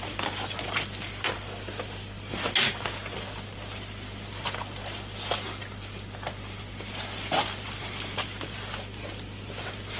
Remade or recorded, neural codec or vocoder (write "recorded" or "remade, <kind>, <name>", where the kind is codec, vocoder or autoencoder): recorded